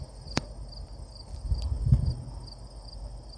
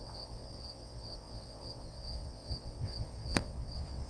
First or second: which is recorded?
first